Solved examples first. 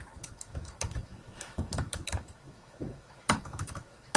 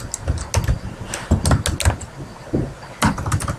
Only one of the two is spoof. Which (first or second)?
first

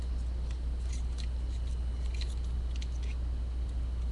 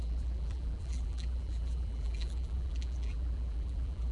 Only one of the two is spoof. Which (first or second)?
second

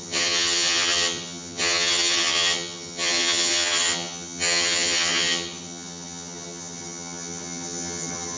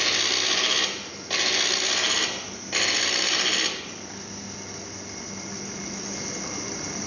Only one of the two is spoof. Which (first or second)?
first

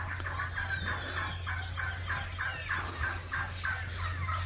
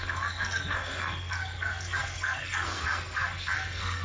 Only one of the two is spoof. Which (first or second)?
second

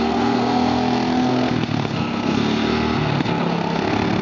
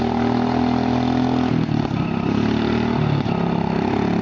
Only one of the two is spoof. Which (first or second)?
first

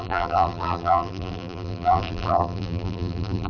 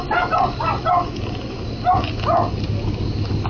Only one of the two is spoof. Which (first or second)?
first